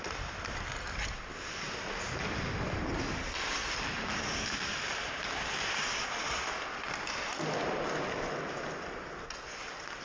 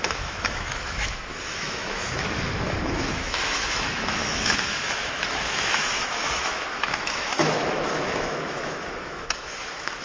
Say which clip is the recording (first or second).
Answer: first